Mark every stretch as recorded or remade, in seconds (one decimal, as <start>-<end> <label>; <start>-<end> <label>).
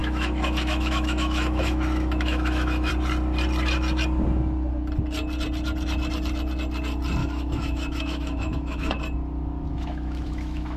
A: 0.0-2.9 remade; 2.9-7.2 recorded; 7.2-9.0 remade; 9.0-9.7 recorded; 9.7-10.8 remade